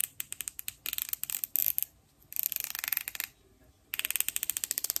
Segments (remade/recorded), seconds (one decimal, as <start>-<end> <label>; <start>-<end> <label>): 0.0-0.6 remade; 0.6-5.0 recorded